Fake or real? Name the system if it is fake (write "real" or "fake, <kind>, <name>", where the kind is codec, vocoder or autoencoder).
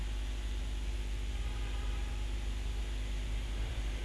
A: fake, vocoder, BigVGAN v2